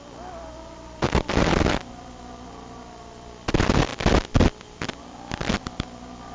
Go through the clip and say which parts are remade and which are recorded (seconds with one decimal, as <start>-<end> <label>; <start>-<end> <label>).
0.0-6.3 recorded